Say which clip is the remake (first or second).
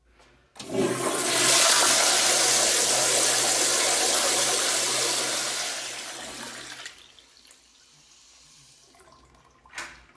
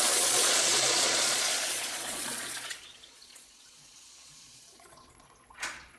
second